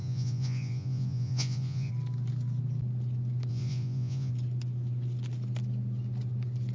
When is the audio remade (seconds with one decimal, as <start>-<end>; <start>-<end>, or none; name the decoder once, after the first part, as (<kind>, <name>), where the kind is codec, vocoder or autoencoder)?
0.0-1.9 (vocoder, Vocos); 3.5-4.3